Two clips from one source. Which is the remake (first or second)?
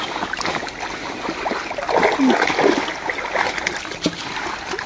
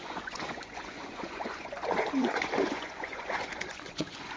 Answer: second